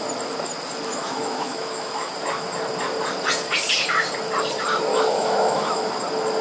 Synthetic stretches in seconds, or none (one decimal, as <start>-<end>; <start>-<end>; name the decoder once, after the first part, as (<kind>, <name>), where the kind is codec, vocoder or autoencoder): 0.9-2.1 (autoencoder, DAC-VAE); 4.9-5.9